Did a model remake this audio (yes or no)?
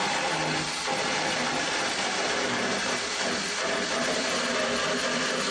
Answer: no